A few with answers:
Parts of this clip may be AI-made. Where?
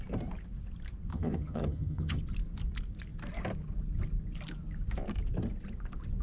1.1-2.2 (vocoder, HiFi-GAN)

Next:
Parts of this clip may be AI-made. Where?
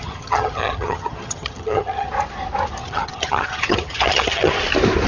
0.0-2.1 (vocoder, HiFi-GAN); 2.8-4.5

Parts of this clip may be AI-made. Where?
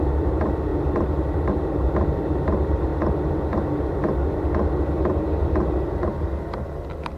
0.0-0.7 (vocoder, BigVGAN v2); 1.5-2.9; 5.8-7.2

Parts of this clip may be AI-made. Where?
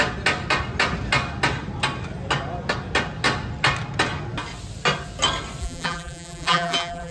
5.6-7.1 (vocoder, BigVGAN v2)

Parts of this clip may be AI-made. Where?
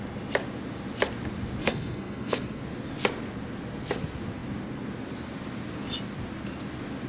1.6-2.6 (codec, SNAC)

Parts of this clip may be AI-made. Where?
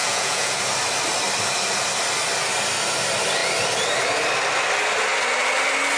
0.0-0.6 (vocoder, Vocos)